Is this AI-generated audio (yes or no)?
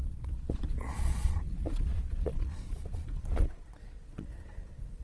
yes